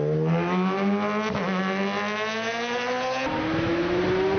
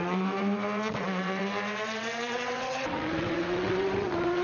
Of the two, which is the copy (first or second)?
second